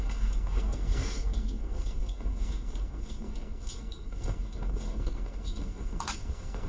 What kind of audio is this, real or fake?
fake